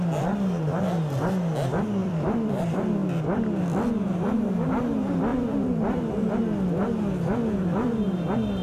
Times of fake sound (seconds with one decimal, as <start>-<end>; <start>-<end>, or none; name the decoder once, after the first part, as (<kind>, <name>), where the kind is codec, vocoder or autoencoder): 2.0-2.6 (vocoder, BigVGAN v2); 5.3-6.0